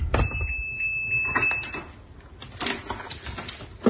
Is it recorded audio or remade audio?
recorded